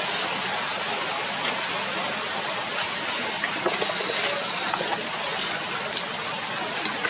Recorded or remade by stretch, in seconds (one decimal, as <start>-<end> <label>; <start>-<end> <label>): 0.0-7.1 recorded